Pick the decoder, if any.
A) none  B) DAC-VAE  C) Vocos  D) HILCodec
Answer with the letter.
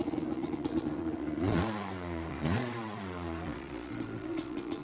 C